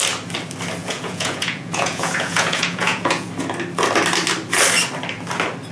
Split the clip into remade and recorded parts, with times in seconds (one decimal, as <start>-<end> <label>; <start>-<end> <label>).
0.0-0.8 recorded; 0.8-3.3 remade; 3.3-5.7 recorded